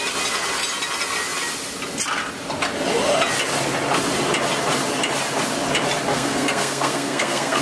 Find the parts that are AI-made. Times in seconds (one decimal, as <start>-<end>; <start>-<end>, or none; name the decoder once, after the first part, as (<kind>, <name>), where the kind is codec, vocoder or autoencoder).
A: 6.1-7.6 (codec, SNAC)